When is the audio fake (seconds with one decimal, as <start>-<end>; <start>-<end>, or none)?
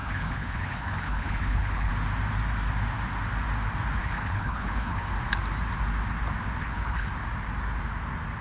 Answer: 0.0-1.9; 4.0-5.1; 6.6-7.1